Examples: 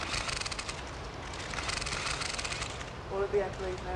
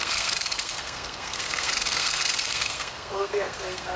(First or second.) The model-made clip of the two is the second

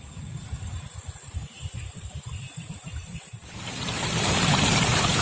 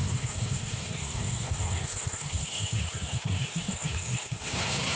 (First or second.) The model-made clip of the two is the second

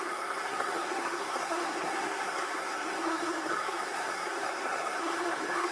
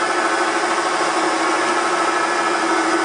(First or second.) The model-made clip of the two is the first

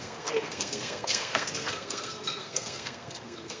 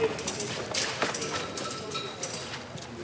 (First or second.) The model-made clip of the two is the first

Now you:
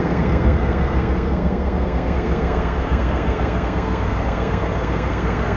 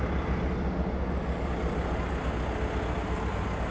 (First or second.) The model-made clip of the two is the first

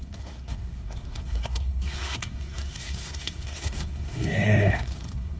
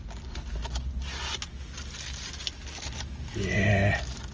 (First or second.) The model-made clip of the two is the first